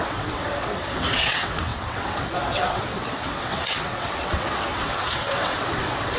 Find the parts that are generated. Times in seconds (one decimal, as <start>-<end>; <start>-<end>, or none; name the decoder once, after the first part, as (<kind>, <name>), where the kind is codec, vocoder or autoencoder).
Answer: 0.0-6.2 (vocoder, WaveNeXt)